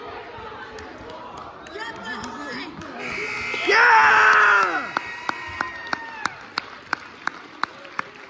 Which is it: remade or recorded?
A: recorded